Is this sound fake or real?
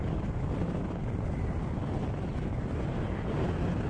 real